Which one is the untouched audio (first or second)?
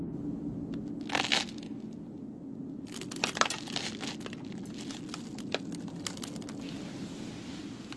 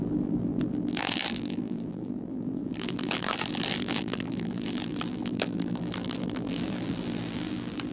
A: first